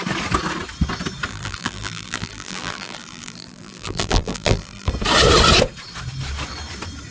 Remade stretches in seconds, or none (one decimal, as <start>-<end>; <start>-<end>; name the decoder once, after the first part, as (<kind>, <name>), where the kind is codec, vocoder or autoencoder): 1.3-4.9 (vocoder, BigVGAN v2)